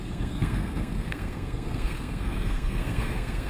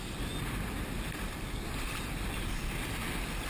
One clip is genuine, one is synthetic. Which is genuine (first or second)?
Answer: second